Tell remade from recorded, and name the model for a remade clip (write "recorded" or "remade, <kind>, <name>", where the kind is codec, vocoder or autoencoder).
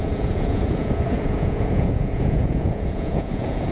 remade, vocoder, Vocos